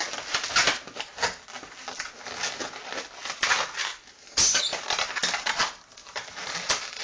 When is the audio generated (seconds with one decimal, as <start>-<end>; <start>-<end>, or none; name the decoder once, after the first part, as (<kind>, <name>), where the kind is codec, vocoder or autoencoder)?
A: 6.0-7.0 (vocoder, BigVGAN v2)